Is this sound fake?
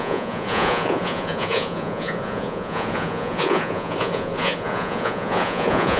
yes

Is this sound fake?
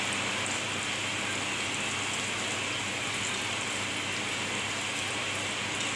no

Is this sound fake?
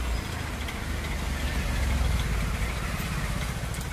no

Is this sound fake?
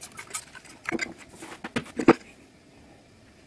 no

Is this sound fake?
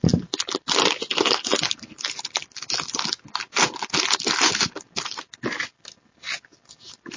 no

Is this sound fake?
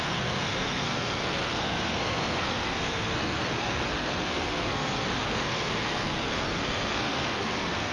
yes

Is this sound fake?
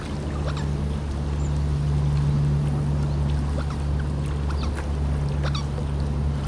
no